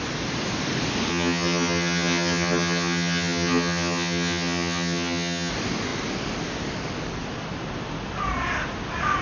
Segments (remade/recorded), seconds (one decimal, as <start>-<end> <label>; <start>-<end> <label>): 0.0-1.1 recorded; 1.1-5.5 remade; 5.5-9.2 recorded